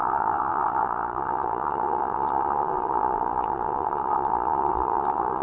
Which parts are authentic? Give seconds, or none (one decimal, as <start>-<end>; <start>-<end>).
none